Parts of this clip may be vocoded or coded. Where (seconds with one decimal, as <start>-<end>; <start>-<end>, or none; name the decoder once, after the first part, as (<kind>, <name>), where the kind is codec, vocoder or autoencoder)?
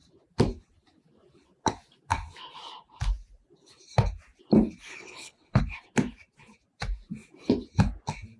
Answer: 4.9-5.6 (codec, HILCodec)